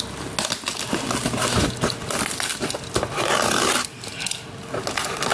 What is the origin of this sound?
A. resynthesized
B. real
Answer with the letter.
B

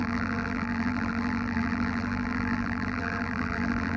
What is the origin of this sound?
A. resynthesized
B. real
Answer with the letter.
A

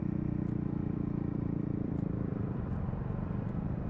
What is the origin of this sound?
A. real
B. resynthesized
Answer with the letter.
B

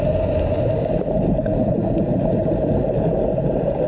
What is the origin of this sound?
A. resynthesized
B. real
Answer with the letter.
B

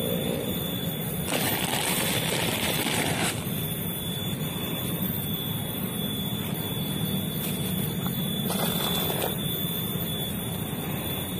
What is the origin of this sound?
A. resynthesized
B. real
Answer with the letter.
A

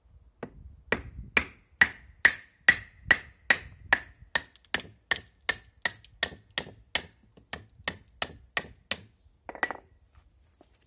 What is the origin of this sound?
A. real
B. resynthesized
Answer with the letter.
A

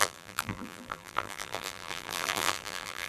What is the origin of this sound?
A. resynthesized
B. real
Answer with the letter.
A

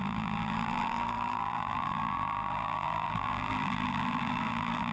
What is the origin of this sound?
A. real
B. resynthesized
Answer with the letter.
B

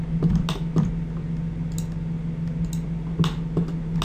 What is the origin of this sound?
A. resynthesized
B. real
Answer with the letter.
B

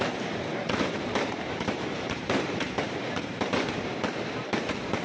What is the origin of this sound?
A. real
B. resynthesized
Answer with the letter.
B